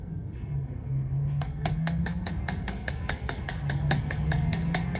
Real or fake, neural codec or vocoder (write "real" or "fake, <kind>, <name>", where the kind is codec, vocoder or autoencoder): fake, codec, SNAC